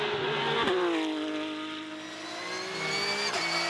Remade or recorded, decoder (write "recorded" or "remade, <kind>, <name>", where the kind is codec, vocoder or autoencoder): recorded